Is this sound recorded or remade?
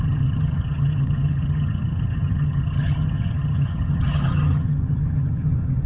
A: remade